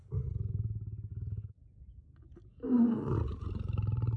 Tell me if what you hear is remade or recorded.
recorded